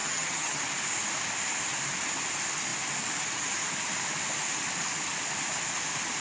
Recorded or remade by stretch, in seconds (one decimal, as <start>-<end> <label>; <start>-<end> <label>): 0.0-0.6 remade; 0.6-6.2 recorded